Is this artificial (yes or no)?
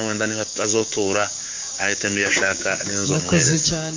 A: yes